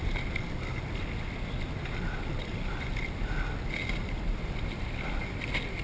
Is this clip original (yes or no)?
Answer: yes